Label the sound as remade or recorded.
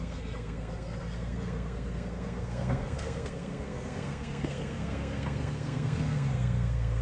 remade